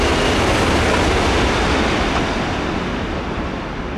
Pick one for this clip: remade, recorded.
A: recorded